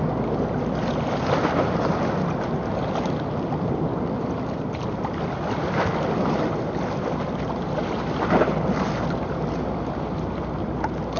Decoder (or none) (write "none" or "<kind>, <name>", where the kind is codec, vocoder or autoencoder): none